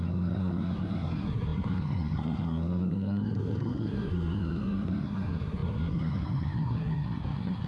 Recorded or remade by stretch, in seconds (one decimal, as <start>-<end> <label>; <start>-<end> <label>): 0.0-7.7 remade